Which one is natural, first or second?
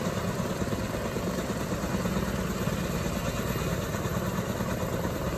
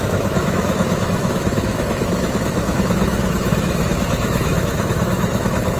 first